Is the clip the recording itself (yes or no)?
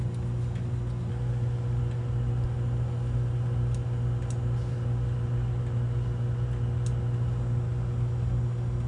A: yes